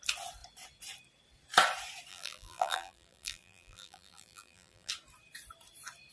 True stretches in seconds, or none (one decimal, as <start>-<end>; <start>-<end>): 0.0-2.1; 4.9-6.1